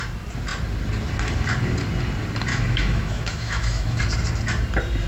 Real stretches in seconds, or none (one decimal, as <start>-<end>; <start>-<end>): 0.0-2.5; 4.0-5.1